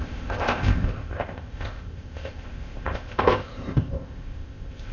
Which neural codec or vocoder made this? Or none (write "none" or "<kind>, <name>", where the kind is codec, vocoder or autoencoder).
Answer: codec, ZipCodec